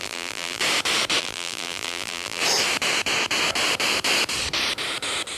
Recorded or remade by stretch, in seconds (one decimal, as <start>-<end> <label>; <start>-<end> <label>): 0.0-0.6 remade; 0.6-1.2 recorded; 1.2-2.4 remade; 2.4-5.4 recorded